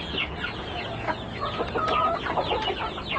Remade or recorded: recorded